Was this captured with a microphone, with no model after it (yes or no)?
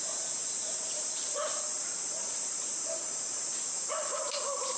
no